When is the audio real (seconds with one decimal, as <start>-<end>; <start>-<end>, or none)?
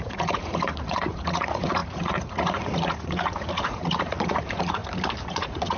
4.8-5.3